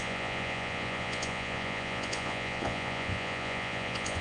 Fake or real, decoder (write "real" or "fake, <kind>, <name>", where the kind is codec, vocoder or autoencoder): fake, vocoder, Vocos